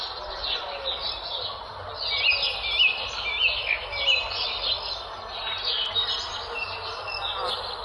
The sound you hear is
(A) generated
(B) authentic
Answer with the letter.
B